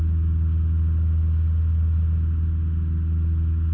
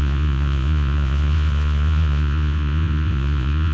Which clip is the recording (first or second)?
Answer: first